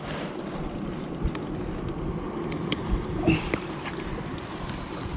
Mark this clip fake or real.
real